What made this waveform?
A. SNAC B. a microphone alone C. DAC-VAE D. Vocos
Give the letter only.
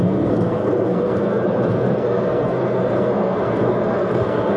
A